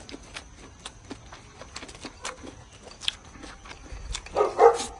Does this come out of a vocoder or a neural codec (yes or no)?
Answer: no